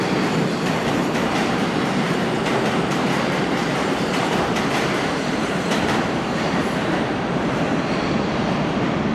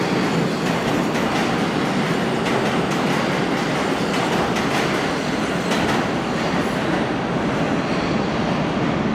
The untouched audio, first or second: second